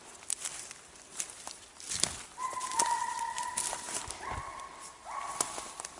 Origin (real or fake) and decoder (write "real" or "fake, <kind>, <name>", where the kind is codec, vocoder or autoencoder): real